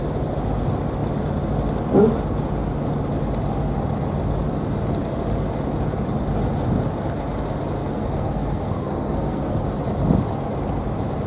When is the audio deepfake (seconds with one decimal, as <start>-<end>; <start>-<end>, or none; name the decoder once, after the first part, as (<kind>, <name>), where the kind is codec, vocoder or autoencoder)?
7.8-9.6 (codec, SNAC)